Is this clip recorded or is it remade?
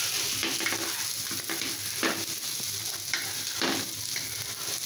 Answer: recorded